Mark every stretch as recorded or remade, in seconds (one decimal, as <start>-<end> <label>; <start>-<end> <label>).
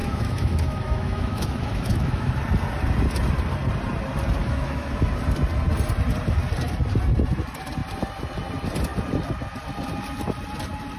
0.0-2.3 remade; 2.3-4.4 recorded; 4.4-5.1 remade; 5.1-11.0 recorded